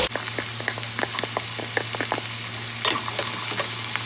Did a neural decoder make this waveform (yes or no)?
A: no